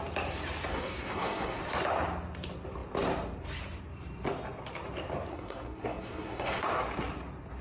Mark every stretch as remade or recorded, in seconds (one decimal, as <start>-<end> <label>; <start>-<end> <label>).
0.0-0.7 recorded; 0.7-1.6 remade; 1.6-5.3 recorded; 5.3-6.6 remade; 6.6-7.6 recorded